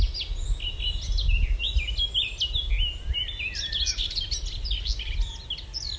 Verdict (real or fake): real